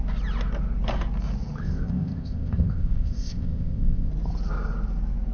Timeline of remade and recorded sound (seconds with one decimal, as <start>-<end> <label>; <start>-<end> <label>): 0.0-1.6 recorded; 1.6-4.1 remade; 4.1-5.3 recorded